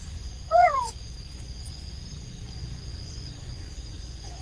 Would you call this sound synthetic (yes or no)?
yes